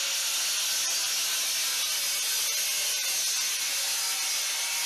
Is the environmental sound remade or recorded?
recorded